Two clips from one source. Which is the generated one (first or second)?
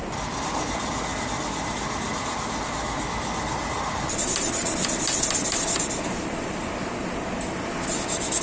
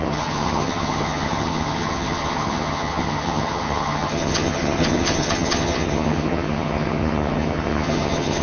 second